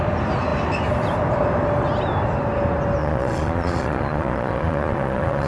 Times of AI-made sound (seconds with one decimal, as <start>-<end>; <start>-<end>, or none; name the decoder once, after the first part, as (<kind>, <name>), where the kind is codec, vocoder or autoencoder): 3.0-5.5 (vocoder, Vocos)